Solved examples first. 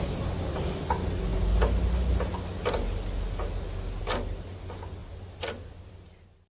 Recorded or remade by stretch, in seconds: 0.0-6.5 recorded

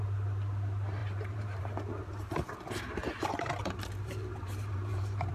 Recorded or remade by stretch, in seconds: 0.0-1.0 recorded; 1.0-1.6 remade; 1.6-3.0 recorded; 3.0-5.3 remade

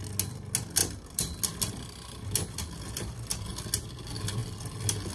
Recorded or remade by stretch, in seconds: 0.0-5.1 recorded

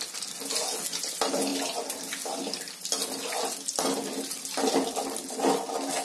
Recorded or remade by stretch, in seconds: 0.0-6.0 recorded

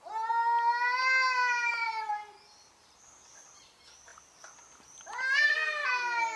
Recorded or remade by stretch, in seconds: 0.0-6.4 recorded

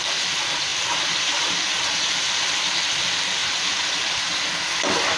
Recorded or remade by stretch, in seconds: 0.0-0.7 recorded; 0.7-2.5 remade; 2.5-3.4 recorded; 3.4-4.5 remade; 4.5-5.2 recorded